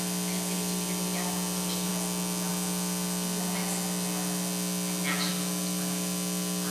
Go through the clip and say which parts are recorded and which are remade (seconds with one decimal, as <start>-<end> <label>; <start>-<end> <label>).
0.0-6.7 recorded